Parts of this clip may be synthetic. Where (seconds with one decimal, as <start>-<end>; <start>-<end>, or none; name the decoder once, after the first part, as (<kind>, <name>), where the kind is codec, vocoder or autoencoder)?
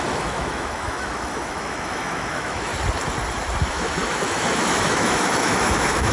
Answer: 0.0-2.7 (autoencoder, DAC-VAE); 3.7-6.1